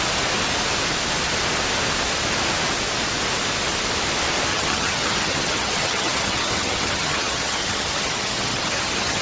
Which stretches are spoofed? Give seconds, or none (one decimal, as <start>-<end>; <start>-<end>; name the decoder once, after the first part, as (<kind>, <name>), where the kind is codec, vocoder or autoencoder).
4.5-9.2 (vocoder, HiFi-GAN)